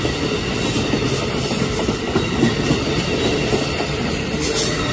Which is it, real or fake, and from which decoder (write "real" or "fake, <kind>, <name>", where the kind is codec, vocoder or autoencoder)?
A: real